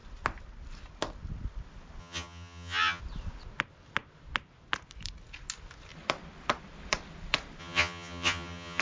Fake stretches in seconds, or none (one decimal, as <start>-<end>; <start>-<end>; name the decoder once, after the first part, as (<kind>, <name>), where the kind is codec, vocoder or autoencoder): 2.0-3.0 (vocoder, HiFi-GAN); 7.6-8.8